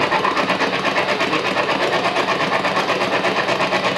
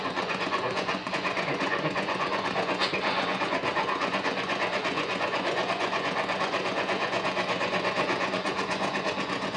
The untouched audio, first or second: first